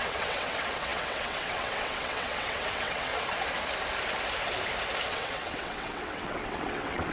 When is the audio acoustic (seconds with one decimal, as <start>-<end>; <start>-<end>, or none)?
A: 3.1-5.1